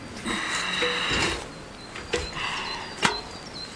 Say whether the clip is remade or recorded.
recorded